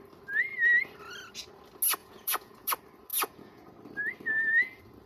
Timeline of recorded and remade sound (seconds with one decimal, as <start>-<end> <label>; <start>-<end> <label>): 0.0-2.0 recorded; 2.0-2.7 remade; 2.7-3.1 recorded; 3.1-3.7 remade; 3.7-5.1 recorded